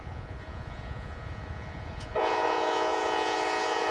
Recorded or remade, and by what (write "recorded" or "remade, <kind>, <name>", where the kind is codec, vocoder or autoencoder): remade, vocoder, Vocos